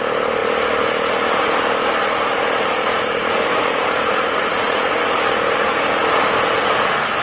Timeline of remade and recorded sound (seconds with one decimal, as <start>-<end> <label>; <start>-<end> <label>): 0.0-2.9 recorded; 2.9-5.2 remade; 5.2-7.2 recorded